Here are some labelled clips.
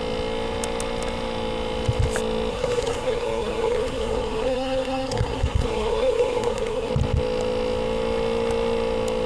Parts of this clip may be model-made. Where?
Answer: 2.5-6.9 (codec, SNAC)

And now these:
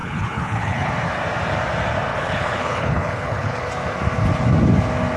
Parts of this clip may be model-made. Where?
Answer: 0.0-0.9 (codec, HILCodec); 2.1-3.7